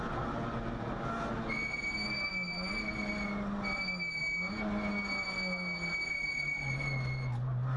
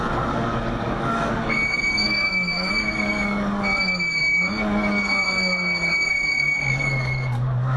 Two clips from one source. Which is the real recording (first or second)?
first